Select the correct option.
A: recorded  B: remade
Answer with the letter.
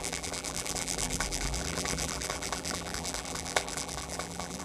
B